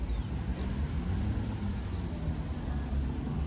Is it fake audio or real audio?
real